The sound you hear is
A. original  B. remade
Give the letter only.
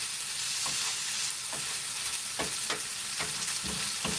A